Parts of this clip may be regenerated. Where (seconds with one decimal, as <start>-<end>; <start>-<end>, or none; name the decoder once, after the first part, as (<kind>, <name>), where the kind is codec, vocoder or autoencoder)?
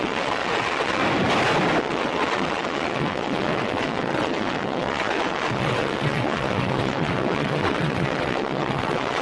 0.0-1.0 (vocoder, WaveNeXt); 1.8-9.2